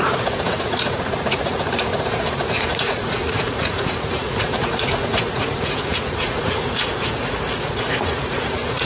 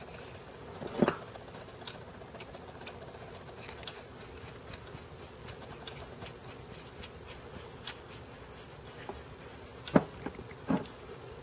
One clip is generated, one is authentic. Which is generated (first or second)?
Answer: first